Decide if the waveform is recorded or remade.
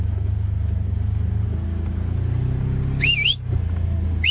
recorded